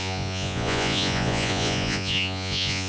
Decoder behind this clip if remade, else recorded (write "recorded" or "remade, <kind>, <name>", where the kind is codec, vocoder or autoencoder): remade, vocoder, Vocos